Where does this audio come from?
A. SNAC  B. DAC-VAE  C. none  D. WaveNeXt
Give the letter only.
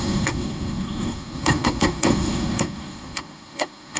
A